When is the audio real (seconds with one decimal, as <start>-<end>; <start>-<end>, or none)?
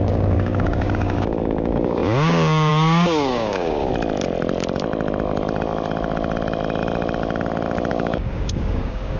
3.9-7.9